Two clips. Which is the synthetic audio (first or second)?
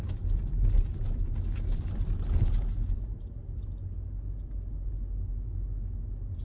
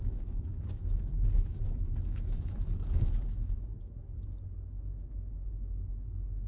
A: second